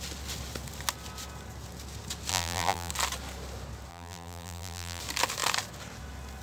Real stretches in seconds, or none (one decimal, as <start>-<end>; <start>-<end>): 0.0-2.3; 2.9-3.9; 5.0-6.4